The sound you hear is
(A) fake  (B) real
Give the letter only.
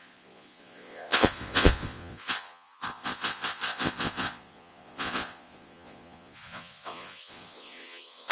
A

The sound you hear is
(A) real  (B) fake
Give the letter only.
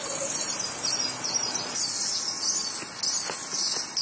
A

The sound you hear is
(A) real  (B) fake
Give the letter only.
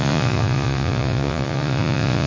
B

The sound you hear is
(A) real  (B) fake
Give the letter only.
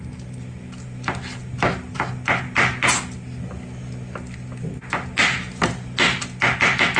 A